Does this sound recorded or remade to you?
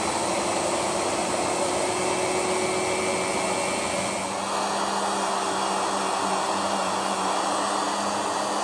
recorded